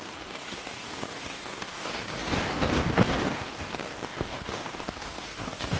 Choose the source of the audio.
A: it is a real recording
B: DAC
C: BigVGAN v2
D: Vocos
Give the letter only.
B